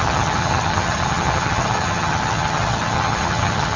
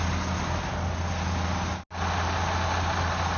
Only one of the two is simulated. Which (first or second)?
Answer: first